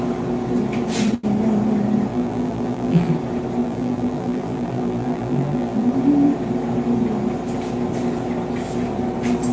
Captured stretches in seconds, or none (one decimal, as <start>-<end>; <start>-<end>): 0.0-2.1; 3.1-3.6; 5.9-9.5